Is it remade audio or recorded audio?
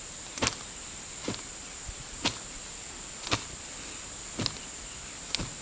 recorded